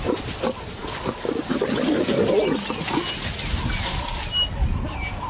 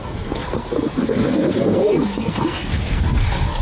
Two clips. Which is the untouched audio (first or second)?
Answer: first